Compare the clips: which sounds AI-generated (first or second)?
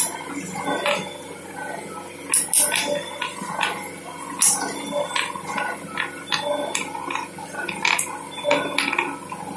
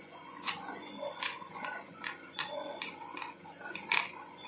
second